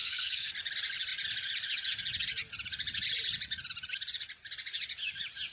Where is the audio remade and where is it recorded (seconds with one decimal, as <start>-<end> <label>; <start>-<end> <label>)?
0.0-0.5 remade; 0.5-5.5 recorded